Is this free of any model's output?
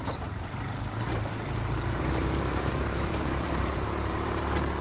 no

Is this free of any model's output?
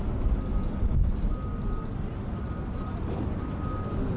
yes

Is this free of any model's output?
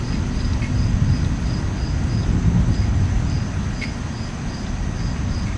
yes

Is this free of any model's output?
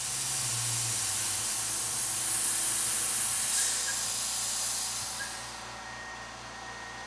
yes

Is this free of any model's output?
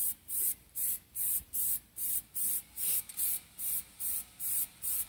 no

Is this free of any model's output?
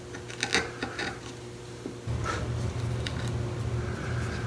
yes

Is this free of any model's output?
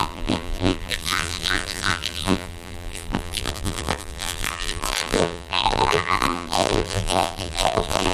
no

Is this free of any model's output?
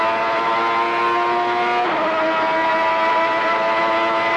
yes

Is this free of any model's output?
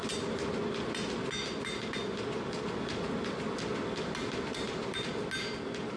yes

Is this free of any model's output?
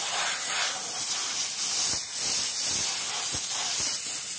yes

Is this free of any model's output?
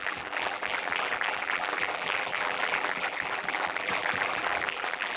no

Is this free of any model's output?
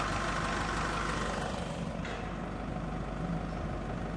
yes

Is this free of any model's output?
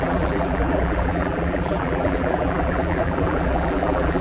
no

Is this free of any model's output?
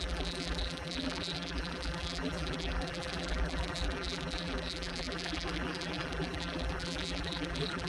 no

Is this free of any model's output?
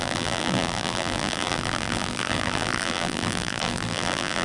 no